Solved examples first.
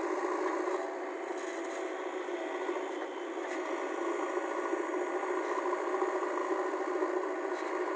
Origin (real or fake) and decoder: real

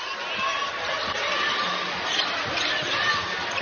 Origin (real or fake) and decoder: real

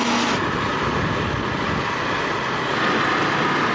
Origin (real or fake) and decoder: real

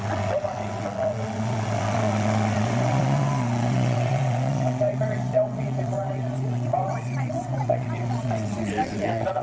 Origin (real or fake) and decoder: fake, vocoder, WaveNeXt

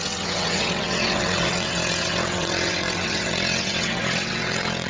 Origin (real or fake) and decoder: fake, vocoder, WaveNeXt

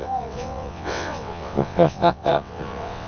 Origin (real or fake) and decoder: fake, vocoder, WaveNeXt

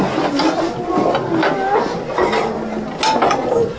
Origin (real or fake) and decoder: real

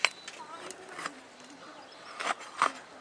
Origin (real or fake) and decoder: real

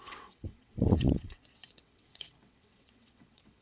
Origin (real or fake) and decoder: fake, vocoder, WaveNeXt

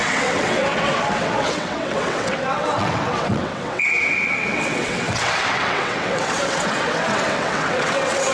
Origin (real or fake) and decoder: fake, vocoder, WaveNeXt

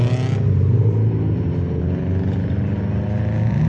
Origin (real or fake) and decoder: real